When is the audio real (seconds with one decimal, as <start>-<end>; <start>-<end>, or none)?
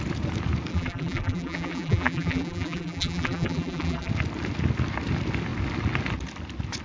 0.0-0.7; 4.1-6.8